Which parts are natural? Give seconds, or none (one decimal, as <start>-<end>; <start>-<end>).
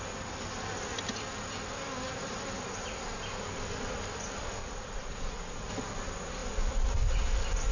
0.0-4.6; 5.7-7.7